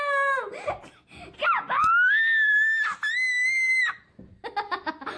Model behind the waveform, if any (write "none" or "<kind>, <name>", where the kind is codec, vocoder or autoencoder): none